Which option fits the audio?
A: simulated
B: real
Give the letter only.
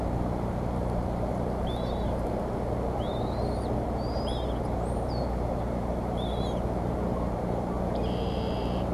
A